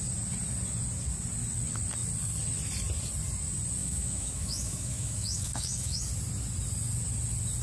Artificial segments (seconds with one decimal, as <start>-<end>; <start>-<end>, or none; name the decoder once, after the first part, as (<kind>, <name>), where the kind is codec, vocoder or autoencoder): 3.8-6.1 (autoencoder, DAC-VAE)